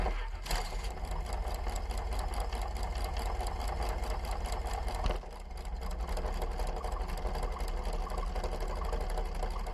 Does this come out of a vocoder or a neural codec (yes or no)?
no